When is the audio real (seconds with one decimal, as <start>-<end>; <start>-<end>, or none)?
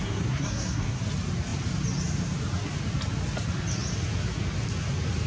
1.0-5.3